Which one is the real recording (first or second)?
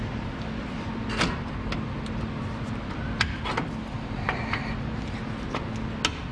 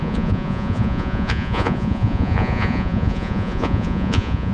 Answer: first